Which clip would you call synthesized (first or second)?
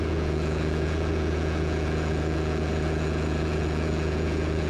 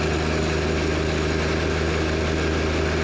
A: first